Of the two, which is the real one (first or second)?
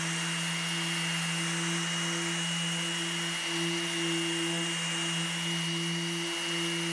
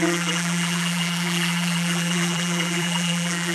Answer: first